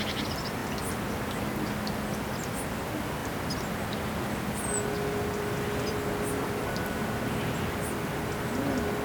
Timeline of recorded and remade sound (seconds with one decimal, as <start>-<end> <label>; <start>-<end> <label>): 0.0-9.0 recorded